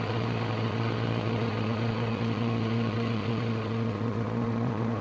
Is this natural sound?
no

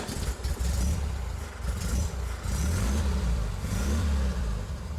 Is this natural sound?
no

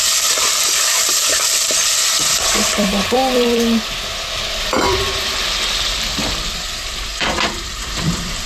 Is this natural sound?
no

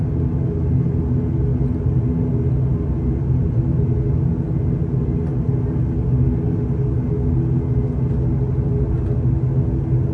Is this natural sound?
yes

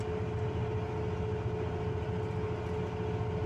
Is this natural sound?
yes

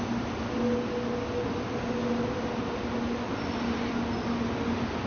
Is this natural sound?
yes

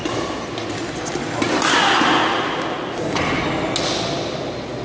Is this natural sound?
yes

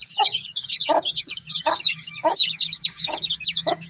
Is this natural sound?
no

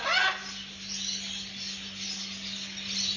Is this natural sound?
yes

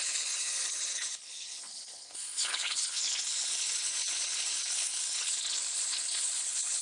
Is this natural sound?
no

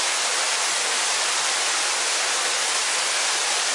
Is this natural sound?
yes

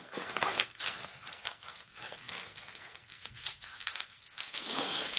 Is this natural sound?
no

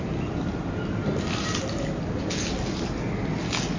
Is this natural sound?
yes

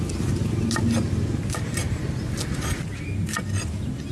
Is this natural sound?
yes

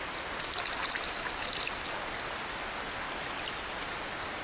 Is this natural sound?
yes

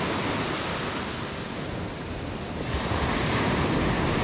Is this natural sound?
yes